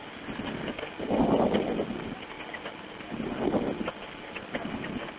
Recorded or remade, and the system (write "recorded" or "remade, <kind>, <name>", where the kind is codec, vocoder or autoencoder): recorded